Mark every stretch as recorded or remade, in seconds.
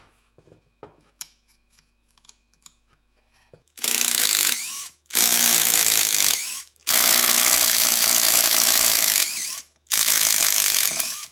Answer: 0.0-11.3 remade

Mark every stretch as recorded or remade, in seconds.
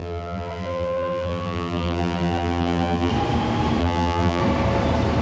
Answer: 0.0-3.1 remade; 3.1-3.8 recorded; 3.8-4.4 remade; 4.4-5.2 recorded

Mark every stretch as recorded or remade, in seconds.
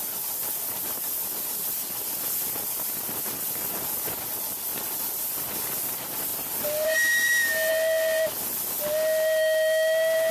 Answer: 0.0-2.4 recorded; 2.4-2.9 remade; 2.9-4.7 recorded; 4.7-5.5 remade; 5.5-6.3 recorded; 6.3-7.7 remade; 7.7-10.3 recorded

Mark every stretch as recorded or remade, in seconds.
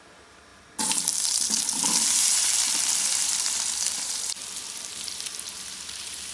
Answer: 0.0-6.3 remade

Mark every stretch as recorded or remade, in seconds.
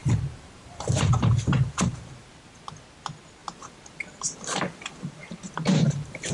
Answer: 0.0-2.3 remade; 2.3-3.4 recorded; 3.4-6.3 remade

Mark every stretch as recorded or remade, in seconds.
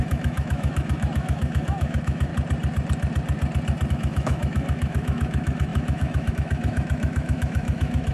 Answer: 0.0-2.3 remade; 2.3-3.9 recorded; 3.9-8.1 remade